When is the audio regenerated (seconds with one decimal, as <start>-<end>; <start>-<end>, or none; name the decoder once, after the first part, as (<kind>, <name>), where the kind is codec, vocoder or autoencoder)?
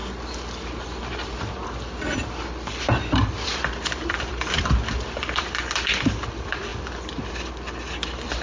1.4-6.7 (vocoder, BigVGAN v2); 7.3-8.4